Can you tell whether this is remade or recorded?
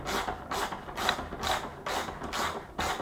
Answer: recorded